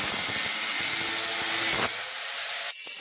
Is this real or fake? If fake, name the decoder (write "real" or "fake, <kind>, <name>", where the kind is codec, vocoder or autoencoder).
real